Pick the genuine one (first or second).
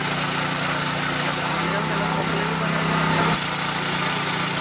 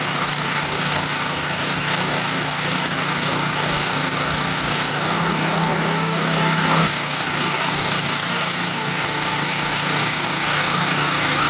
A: first